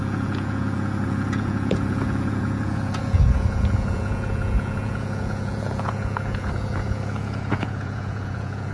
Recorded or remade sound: remade